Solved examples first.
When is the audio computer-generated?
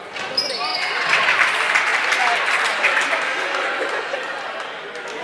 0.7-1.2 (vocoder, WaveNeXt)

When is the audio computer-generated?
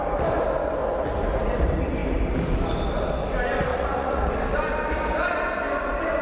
3.7-4.3 (vocoder, Vocos)